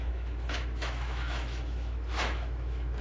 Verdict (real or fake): fake